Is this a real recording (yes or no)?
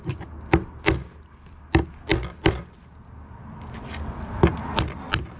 yes